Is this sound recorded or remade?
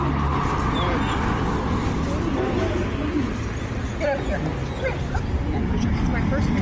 recorded